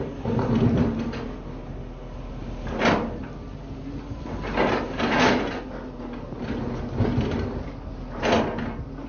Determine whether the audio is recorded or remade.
recorded